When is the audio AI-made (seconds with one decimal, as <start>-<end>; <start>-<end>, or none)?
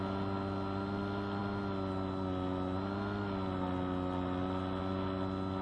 none